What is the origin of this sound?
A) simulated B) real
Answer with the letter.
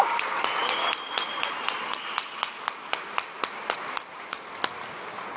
B